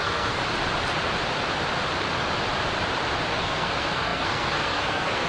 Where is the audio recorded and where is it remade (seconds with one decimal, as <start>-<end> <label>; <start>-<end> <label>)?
0.0-0.4 remade; 0.4-3.3 recorded; 3.3-5.3 remade